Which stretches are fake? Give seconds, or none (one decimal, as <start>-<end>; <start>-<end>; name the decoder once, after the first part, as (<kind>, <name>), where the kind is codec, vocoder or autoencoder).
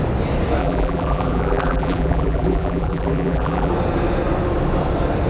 0.6-3.7 (vocoder, BigVGAN v2)